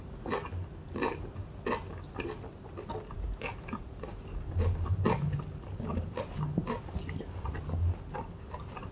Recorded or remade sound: recorded